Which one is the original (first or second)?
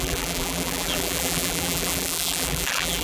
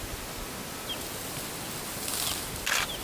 second